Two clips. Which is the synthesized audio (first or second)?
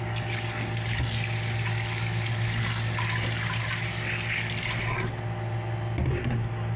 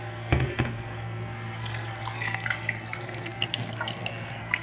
second